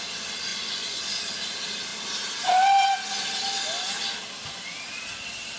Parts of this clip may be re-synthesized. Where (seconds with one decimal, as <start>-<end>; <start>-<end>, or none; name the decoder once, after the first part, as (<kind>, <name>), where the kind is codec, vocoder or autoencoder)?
0.5-1.0 (vocoder, Vocos)